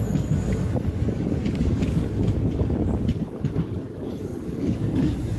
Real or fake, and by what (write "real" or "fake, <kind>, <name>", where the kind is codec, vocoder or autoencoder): fake, codec, DAC